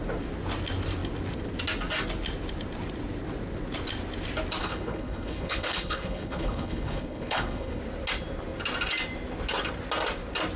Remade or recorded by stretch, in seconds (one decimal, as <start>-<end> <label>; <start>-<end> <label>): 0.0-4.6 recorded; 4.6-7.8 remade; 7.8-10.6 recorded